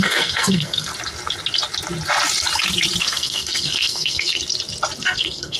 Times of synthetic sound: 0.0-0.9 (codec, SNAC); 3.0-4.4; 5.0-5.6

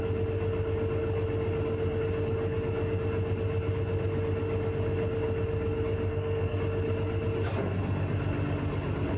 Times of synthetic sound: 6.1-6.6 (codec, SNAC)